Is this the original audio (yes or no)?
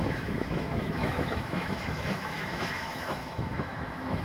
no